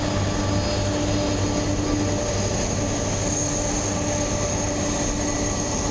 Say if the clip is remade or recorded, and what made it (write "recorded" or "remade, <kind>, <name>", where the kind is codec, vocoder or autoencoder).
recorded